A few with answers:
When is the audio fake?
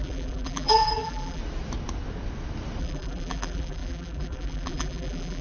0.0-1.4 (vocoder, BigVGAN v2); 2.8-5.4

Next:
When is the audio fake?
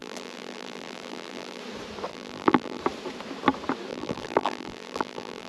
0.0-1.6 (vocoder, BigVGAN v2); 2.1-2.8; 3.9-5.5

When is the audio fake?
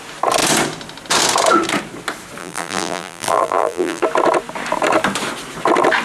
2.4-4.0 (vocoder, BigVGAN v2)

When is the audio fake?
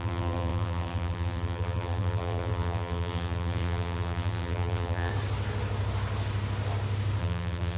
0.0-5.1 (vocoder, BigVGAN v2); 7.2-7.8